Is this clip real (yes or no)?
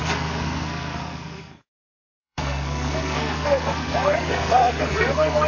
no